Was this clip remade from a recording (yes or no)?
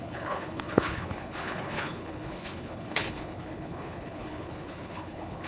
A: yes